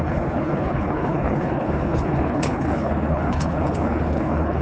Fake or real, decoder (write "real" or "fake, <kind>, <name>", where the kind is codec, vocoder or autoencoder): fake, codec, HILCodec